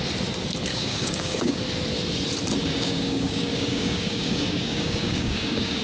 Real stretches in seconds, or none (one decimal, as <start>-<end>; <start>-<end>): 0.0-0.7; 1.6-2.6